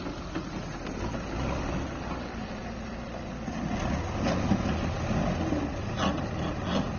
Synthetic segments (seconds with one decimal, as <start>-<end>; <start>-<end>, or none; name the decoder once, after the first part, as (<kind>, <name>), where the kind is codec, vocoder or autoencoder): none